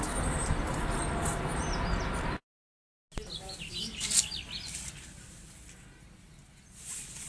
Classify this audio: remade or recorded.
recorded